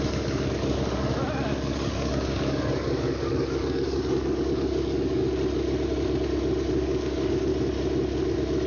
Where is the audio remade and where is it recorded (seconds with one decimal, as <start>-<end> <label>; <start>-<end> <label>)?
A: 0.0-5.2 remade; 5.2-6.7 recorded; 6.7-7.5 remade; 7.5-8.7 recorded